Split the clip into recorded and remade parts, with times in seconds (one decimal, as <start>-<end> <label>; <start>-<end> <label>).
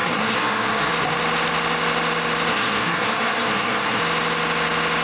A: 0.0-0.9 remade; 0.9-2.5 recorded; 2.5-4.0 remade; 4.0-5.0 recorded